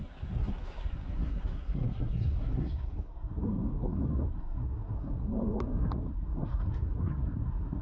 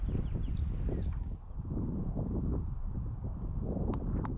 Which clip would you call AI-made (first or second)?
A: first